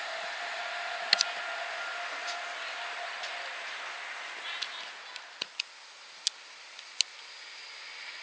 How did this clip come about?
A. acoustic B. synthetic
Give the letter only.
A